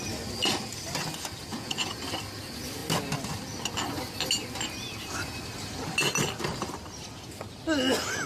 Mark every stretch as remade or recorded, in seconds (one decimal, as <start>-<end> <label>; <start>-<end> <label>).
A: 0.0-1.5 recorded; 1.5-2.0 remade; 2.0-8.3 recorded